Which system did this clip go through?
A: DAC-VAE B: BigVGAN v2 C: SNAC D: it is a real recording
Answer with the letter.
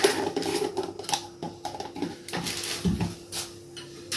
D